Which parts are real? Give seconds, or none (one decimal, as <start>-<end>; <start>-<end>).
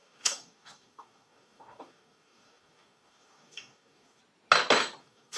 4.2-5.0